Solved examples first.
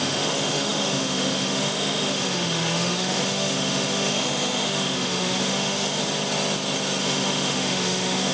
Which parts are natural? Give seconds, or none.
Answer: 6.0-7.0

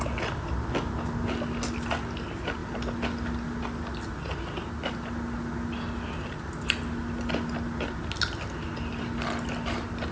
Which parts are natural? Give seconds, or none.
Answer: 0.0-10.1

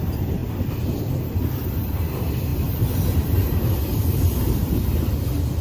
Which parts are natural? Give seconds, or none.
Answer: none